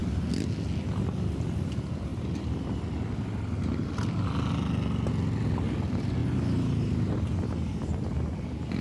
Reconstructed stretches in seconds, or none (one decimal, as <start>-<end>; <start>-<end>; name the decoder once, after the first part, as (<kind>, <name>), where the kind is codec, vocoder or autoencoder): none